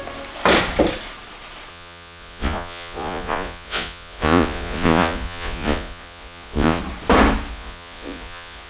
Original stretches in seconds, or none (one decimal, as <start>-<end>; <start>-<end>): 0.0-1.7; 6.8-7.5